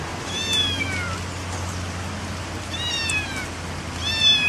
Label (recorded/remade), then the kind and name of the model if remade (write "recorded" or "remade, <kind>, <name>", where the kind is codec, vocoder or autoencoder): recorded